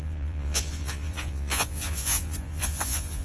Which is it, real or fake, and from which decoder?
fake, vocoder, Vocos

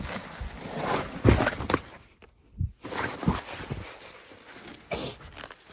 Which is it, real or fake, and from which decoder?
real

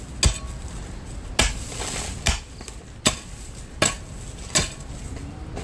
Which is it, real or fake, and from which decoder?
real